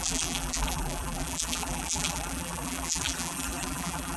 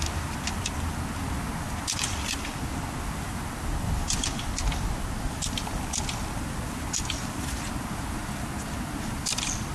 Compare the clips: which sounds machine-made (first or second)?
first